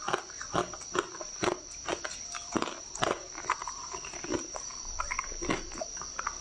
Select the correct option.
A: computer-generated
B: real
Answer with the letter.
B